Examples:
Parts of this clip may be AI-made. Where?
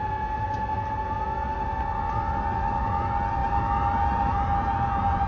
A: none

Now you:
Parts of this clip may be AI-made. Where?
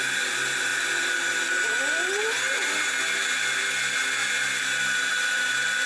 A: none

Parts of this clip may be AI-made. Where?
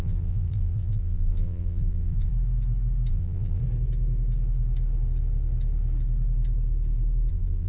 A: 0.0-2.3 (vocoder, BigVGAN v2); 3.1-3.6; 7.3-7.7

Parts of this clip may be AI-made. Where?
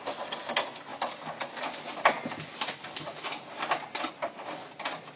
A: none